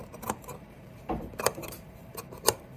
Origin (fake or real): fake